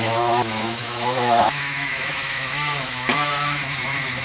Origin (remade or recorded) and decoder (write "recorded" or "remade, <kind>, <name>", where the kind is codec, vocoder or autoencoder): remade, autoencoder, DAC-VAE